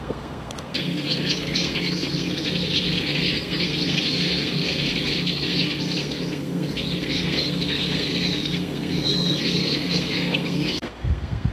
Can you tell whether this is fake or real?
fake